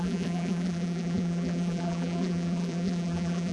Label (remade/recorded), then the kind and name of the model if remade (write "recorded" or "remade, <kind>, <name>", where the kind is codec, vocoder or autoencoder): remade, vocoder, BigVGAN v2